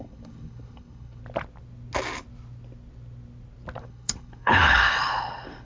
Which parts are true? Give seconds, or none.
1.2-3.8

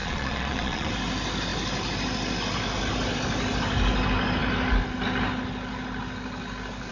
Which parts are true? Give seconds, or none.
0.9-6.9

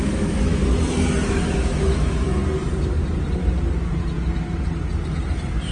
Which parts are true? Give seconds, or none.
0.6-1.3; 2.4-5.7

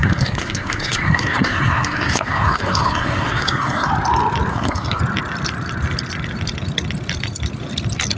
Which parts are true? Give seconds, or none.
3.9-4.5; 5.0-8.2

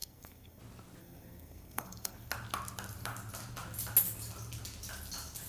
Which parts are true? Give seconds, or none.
0.6-1.0; 2.3-5.5

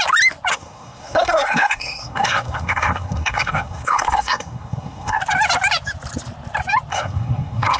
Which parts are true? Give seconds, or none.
0.0-0.5; 5.2-6.9